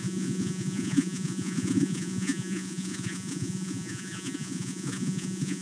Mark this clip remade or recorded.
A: remade